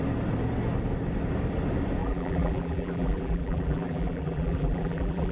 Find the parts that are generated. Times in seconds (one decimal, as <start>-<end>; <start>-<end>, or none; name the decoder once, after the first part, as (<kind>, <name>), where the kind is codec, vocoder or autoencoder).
2.0-5.3 (vocoder, BigVGAN v2)